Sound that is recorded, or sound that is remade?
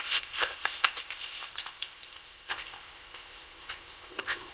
remade